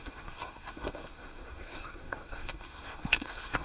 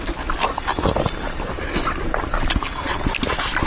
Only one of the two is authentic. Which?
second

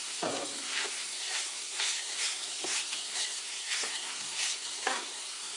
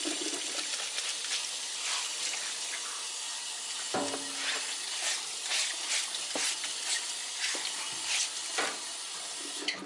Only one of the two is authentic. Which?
second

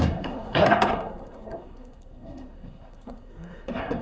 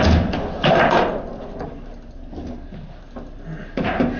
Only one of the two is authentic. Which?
second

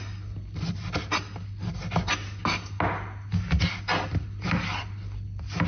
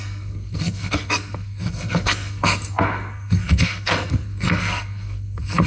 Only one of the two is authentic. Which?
first